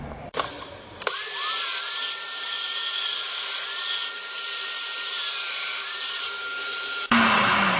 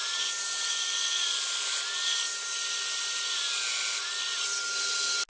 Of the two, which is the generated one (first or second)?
first